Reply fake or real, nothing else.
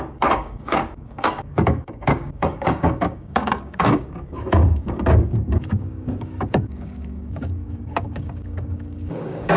fake